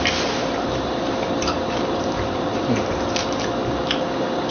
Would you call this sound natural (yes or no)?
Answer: no